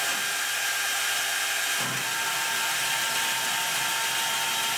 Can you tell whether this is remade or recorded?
recorded